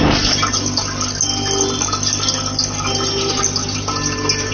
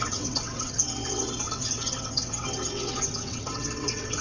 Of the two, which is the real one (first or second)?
first